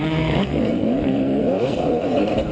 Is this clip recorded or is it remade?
remade